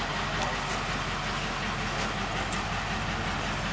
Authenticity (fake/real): real